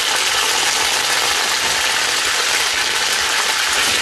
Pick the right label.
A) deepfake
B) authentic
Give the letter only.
B